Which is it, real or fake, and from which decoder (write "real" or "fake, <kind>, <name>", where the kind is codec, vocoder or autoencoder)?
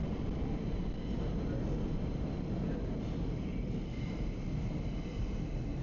real